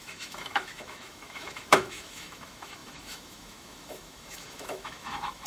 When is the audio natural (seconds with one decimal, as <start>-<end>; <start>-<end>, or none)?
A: none